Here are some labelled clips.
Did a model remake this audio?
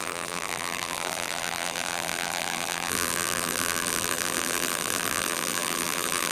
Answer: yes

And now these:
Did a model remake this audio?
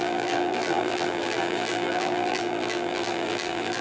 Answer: yes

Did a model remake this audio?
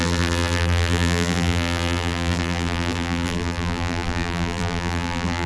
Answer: yes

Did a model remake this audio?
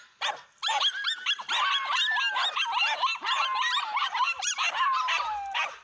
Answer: no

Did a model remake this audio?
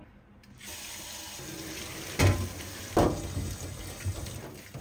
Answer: no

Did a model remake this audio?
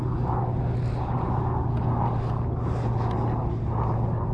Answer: no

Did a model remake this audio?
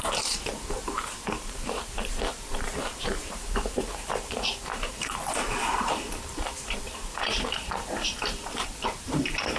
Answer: yes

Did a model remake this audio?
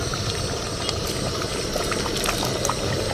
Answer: no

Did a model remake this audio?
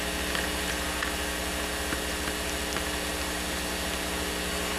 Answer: no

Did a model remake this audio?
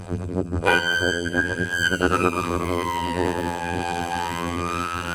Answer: yes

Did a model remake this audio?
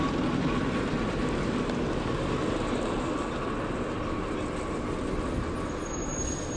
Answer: no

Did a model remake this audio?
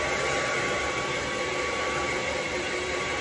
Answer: yes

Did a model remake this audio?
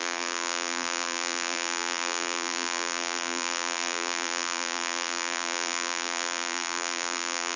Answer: yes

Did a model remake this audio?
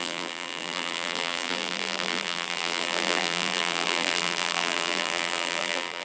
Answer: yes